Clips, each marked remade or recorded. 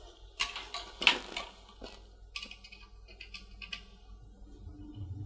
recorded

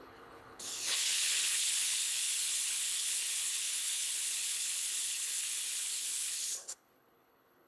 remade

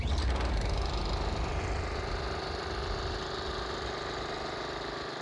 recorded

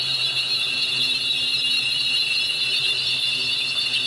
recorded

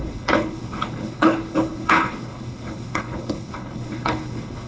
remade